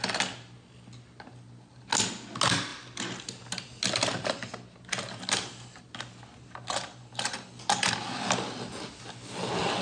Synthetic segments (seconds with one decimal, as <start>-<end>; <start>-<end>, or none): none